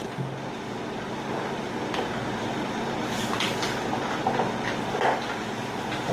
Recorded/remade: recorded